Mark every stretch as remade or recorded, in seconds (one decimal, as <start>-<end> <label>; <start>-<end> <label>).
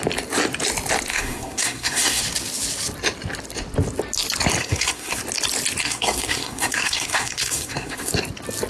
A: 0.0-1.1 recorded; 1.1-2.2 remade; 2.2-4.6 recorded; 4.6-5.2 remade; 5.2-5.8 recorded; 5.8-8.1 remade; 8.1-8.7 recorded